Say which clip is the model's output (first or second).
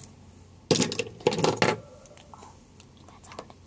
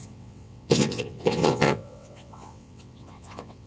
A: second